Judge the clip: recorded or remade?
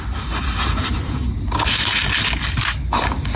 recorded